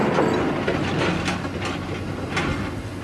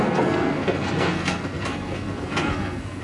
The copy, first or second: second